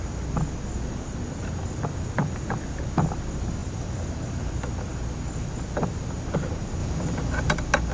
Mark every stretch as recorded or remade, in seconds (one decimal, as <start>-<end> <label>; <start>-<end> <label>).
0.0-3.6 recorded; 3.6-4.5 remade; 4.5-7.9 recorded